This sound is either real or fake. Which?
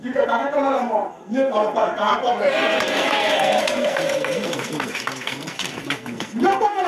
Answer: fake